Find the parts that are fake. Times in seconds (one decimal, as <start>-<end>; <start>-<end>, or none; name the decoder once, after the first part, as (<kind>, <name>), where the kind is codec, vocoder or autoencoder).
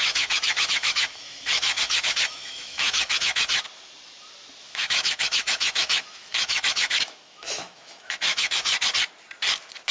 0.0-3.5 (autoencoder, DAC-VAE); 4.6-8.7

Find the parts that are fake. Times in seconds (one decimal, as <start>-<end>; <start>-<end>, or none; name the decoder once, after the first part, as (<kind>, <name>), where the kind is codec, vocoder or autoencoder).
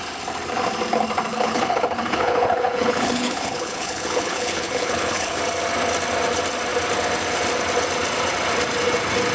1.3-5.4 (codec, HILCodec)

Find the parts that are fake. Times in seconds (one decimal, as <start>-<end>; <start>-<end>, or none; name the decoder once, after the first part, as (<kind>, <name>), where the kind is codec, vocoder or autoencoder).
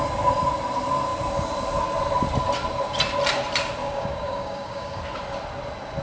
3.8-5.0 (codec, DAC)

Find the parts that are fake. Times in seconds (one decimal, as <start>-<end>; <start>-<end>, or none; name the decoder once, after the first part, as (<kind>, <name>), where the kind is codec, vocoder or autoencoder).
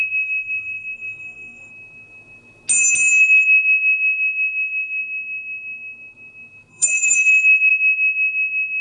0.0-1.7 (codec, SNAC); 3.2-5.0; 6.7-7.7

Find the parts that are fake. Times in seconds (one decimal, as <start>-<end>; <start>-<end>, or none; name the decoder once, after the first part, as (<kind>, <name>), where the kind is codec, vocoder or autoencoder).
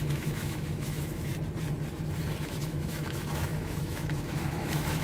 0.0-1.3 (autoencoder, DAC-VAE); 2.4-5.0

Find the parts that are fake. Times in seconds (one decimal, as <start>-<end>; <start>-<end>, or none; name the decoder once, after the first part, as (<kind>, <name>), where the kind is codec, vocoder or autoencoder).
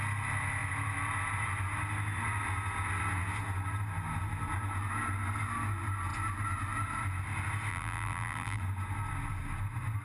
7.7-8.6 (vocoder, BigVGAN v2)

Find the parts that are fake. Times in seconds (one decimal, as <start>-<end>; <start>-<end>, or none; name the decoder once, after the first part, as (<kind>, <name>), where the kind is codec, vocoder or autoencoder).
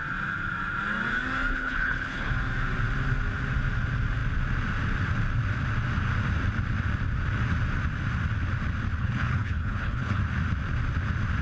1.5-2.3 (codec, HILCodec); 9.0-10.2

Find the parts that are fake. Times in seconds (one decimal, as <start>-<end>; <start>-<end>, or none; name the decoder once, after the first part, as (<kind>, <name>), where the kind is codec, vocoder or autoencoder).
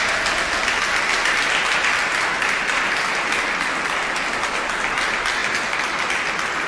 none